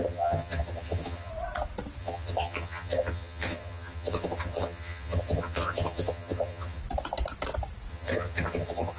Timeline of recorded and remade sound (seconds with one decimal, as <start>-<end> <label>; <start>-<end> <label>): 0.0-1.3 remade; 1.3-2.0 recorded; 2.0-6.8 remade; 6.8-7.9 recorded; 7.9-9.0 remade